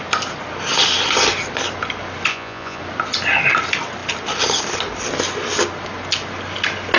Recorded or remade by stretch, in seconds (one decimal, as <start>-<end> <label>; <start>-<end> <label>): 0.0-2.3 recorded; 2.3-2.8 remade; 2.8-7.0 recorded